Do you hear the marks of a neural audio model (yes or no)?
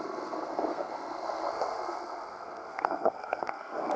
yes